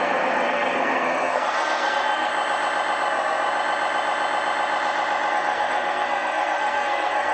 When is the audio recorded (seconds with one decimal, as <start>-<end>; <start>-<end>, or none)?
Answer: 2.3-5.3